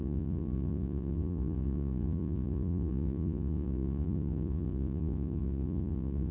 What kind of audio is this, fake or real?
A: fake